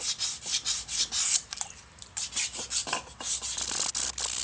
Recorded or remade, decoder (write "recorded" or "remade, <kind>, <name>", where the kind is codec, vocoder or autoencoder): recorded